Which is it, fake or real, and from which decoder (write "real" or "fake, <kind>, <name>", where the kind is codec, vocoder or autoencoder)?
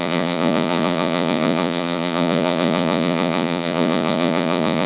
fake, vocoder, Vocos